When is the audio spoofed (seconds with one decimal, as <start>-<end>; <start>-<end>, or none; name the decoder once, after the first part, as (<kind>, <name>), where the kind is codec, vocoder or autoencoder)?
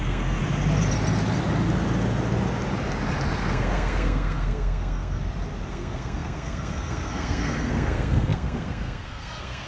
0.0-0.4 (codec, SNAC); 3.4-5.2; 5.7-9.7